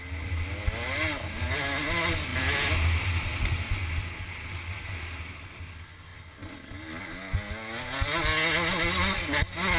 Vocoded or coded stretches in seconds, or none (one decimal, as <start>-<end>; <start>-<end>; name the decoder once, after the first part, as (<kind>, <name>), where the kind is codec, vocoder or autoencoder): none